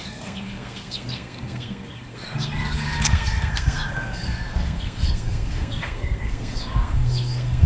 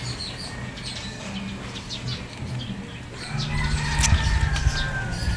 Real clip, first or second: second